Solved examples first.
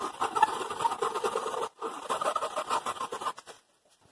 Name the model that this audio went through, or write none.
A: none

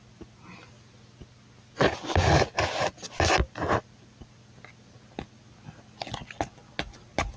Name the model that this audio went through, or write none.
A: none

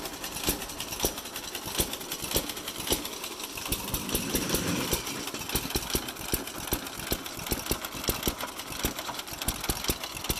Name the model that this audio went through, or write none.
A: none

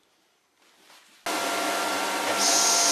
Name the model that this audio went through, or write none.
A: none